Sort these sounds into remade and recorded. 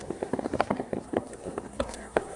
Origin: remade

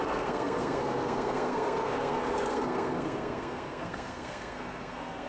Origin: remade